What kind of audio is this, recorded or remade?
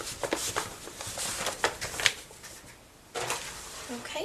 recorded